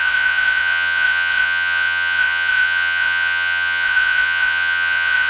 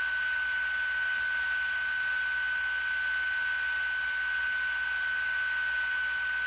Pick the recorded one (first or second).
second